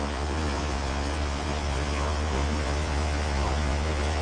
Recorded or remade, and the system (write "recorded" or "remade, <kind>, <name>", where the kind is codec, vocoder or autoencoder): remade, vocoder, Vocos